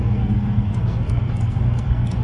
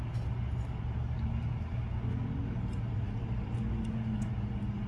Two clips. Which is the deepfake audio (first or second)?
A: first